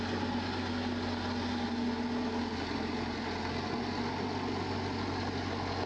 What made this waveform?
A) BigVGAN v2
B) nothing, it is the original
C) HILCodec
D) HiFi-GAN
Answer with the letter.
B